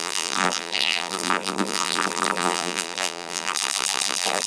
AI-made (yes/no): yes